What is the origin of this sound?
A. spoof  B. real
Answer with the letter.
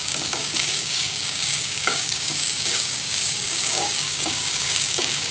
A